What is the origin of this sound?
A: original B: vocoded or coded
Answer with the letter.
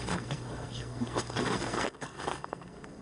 B